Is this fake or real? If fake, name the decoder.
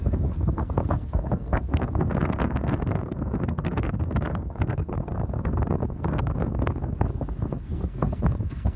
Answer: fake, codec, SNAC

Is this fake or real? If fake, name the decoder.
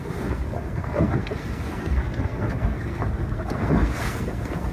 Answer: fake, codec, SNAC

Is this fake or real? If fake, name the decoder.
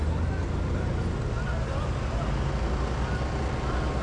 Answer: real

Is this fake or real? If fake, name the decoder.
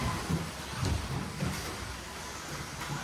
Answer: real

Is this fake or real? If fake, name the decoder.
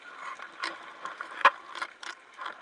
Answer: real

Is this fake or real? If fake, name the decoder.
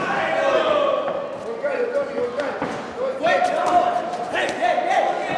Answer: real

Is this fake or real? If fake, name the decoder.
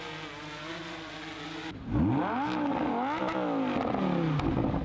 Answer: real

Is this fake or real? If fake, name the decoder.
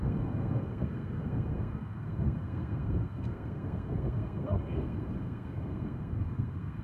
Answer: fake, codec, SNAC